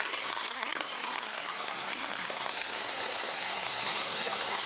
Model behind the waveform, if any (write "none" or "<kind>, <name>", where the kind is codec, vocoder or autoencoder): codec, SNAC